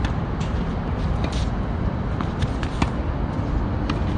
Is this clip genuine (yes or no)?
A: yes